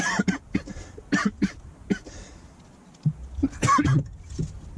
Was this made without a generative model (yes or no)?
yes